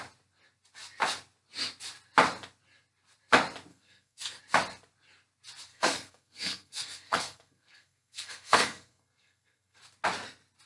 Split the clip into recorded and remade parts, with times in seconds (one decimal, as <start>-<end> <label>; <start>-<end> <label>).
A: 0.0-3.7 recorded; 3.7-4.4 remade; 4.4-5.7 recorded; 5.7-9.8 remade; 9.8-10.7 recorded